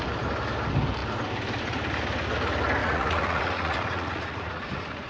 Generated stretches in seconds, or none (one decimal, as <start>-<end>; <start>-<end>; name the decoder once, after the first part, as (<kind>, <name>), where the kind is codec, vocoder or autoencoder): 2.8-5.1 (vocoder, Vocos)